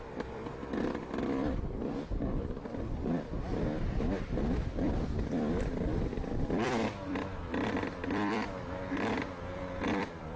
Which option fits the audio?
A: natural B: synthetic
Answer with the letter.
B